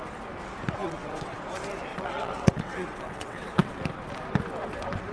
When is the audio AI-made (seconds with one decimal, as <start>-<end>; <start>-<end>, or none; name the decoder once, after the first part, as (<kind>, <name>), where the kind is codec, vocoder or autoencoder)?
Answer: 0.8-1.4 (vocoder, WaveNeXt); 1.9-3.8